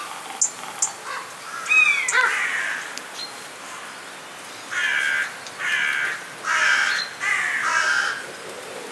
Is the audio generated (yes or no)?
no